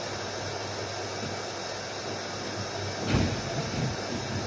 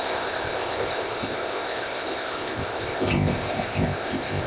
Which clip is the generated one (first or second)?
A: second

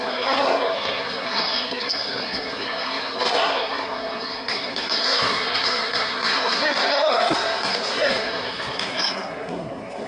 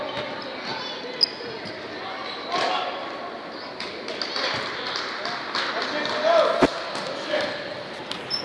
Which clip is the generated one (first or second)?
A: first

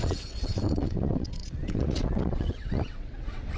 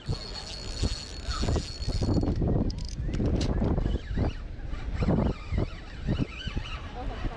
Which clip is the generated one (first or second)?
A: first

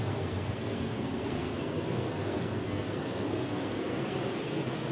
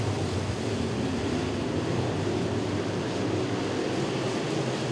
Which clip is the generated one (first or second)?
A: first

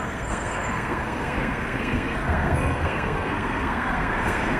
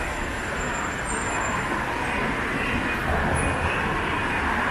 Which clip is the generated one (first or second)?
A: first